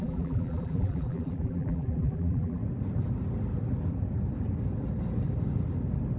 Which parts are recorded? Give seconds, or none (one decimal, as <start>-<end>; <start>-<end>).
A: 2.6-6.2